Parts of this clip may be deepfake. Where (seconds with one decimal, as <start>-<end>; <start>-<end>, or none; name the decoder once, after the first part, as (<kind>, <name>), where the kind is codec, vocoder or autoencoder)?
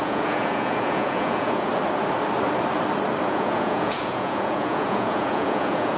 0.0-1.7 (vocoder, Vocos); 3.2-6.0